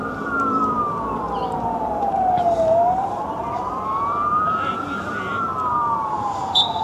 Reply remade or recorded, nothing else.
remade